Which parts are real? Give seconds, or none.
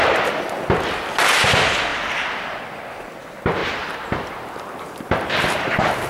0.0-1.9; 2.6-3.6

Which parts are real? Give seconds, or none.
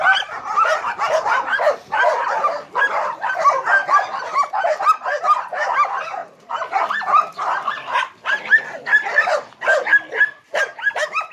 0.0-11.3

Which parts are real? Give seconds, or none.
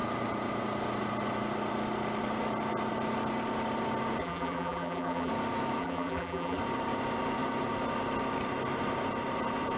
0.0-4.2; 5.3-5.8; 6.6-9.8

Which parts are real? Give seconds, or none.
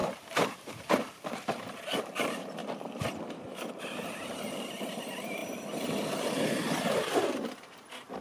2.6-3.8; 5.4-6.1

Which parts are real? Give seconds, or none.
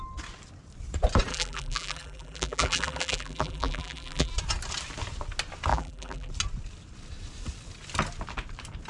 0.0-1.3; 4.3-5.7; 6.3-8.9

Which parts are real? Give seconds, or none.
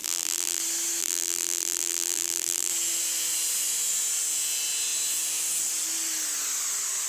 0.6-1.0; 2.7-7.1